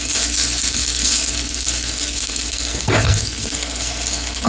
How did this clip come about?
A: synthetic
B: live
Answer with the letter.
A